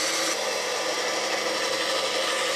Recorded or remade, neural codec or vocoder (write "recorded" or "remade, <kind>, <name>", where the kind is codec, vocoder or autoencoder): recorded